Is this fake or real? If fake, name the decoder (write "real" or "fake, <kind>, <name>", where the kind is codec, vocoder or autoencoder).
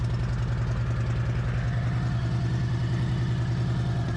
real